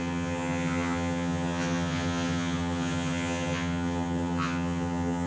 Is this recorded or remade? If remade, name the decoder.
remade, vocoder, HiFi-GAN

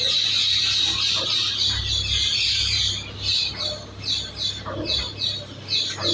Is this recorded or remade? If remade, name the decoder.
recorded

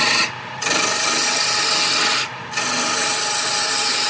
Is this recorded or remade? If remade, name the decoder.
recorded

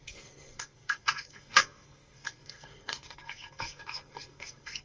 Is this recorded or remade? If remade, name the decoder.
remade, codec, SNAC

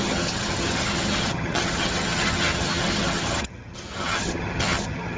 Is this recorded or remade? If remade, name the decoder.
remade, vocoder, HiFi-GAN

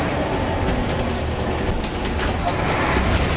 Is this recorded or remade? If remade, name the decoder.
recorded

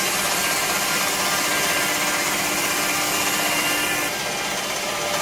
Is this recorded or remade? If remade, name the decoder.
recorded